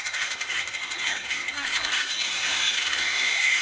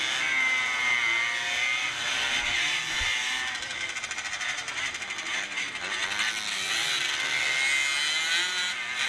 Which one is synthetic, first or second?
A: first